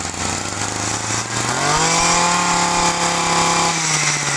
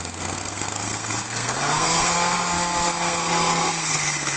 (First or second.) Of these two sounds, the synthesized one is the second